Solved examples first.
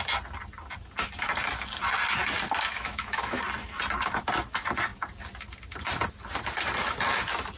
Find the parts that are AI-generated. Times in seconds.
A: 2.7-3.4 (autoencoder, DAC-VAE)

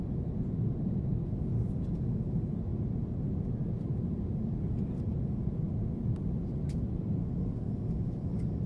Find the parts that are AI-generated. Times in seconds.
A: 7.2-7.7 (codec, SNAC)